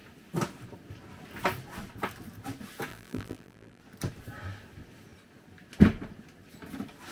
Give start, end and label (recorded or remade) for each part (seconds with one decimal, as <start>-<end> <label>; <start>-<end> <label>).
0.0-2.9 recorded; 2.9-3.8 remade; 3.8-7.1 recorded